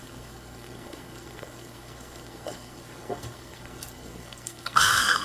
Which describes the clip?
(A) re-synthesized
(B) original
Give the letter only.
A